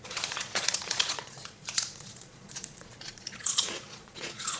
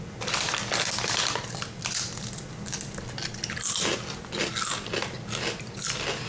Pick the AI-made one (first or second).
first